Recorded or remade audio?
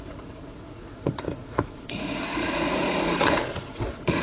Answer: remade